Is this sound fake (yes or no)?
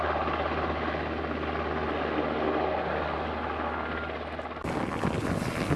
no